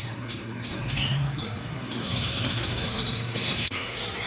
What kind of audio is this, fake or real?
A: fake